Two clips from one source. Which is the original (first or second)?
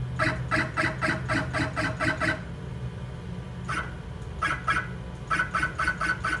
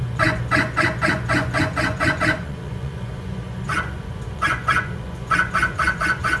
first